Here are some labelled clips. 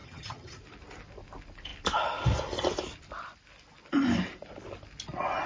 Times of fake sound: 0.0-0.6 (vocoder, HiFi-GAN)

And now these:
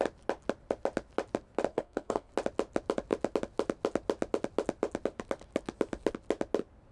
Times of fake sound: 1.7-2.3 (codec, SNAC)

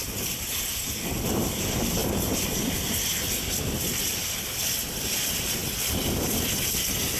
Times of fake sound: none

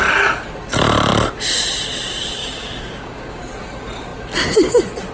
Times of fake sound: 2.4-3.4 (codec, DAC)